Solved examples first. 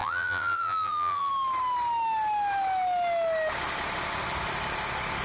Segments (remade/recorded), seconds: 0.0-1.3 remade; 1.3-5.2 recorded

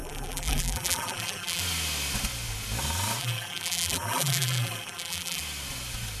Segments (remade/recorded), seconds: 0.0-1.6 remade; 1.6-3.2 recorded; 3.2-5.4 remade; 5.4-6.2 recorded

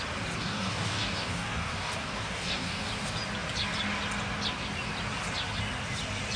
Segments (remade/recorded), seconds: 0.0-0.4 recorded; 0.4-2.9 remade; 2.9-6.4 recorded

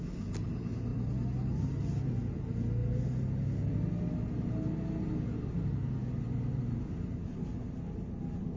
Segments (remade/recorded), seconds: 0.0-0.9 recorded; 0.9-1.6 remade; 1.6-8.6 recorded

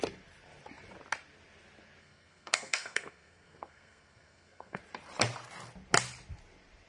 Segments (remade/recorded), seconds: 0.0-2.0 recorded; 2.0-4.8 remade; 4.8-6.9 recorded

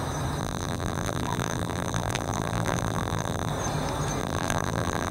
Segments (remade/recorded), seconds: 0.0-0.4 recorded; 0.4-3.5 remade; 3.5-4.2 recorded; 4.2-5.1 remade

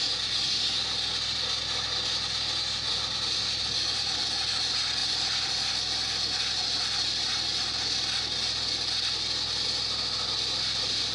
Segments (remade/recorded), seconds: 0.0-5.0 recorded; 5.0-5.7 remade; 5.7-11.1 recorded

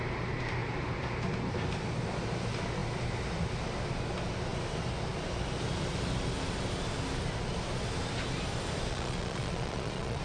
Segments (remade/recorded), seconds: 0.0-8.9 recorded; 8.9-10.2 remade